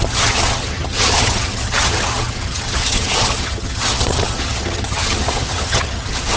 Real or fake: fake